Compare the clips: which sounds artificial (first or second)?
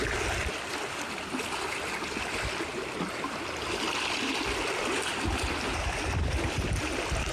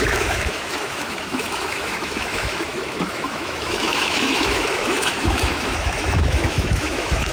second